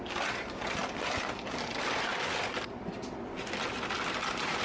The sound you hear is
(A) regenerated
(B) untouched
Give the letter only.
B